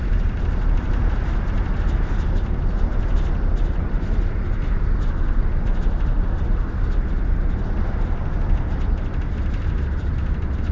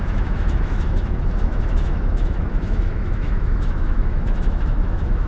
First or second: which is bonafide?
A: first